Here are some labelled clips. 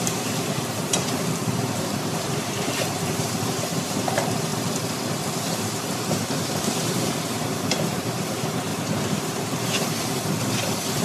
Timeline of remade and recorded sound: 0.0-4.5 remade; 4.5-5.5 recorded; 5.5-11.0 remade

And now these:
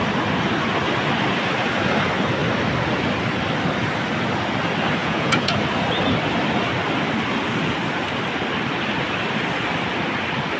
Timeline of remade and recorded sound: 0.0-5.0 recorded; 5.0-5.5 remade; 5.5-10.6 recorded

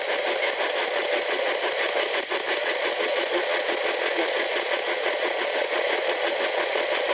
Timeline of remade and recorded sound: 0.0-0.8 recorded; 0.8-1.5 remade; 1.5-2.6 recorded; 2.6-7.1 remade

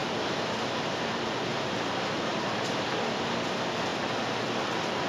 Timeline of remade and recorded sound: 0.0-1.5 remade; 1.5-2.3 recorded; 2.3-2.9 remade; 2.9-3.9 recorded; 3.9-4.5 remade; 4.5-5.1 recorded

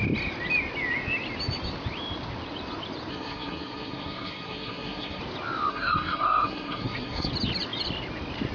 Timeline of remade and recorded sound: 0.0-3.1 recorded; 3.1-5.2 remade; 5.2-5.7 recorded; 5.7-7.3 remade; 7.3-8.5 recorded

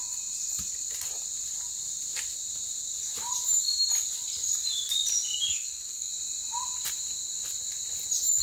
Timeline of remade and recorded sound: 0.0-5.5 recorded; 5.5-6.1 remade; 6.1-8.4 recorded